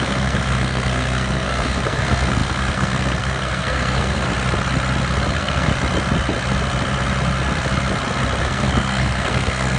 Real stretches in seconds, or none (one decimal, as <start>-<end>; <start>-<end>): 4.3-5.3; 5.7-8.4